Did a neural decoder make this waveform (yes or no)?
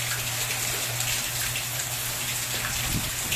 no